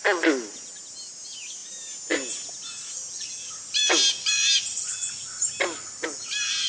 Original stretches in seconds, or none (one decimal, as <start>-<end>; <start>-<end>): 0.0-6.7